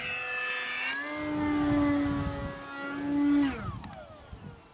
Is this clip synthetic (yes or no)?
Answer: no